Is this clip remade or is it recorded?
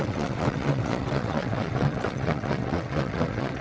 remade